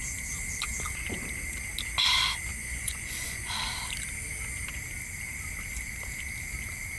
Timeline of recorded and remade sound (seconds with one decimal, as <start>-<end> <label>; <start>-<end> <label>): 0.0-2.5 recorded; 2.5-3.5 remade; 3.5-7.0 recorded